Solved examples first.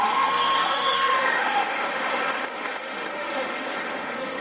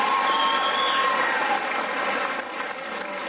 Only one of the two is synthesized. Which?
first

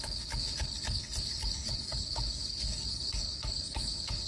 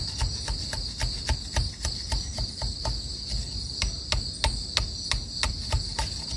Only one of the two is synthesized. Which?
first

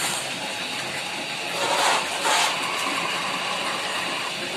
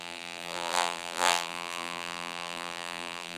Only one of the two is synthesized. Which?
second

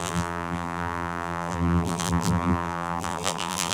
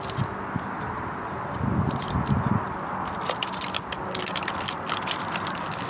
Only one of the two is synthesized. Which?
first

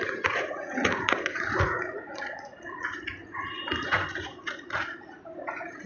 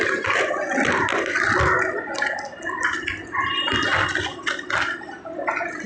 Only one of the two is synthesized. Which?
first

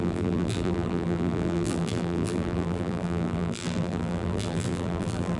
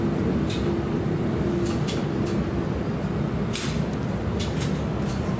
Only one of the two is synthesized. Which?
first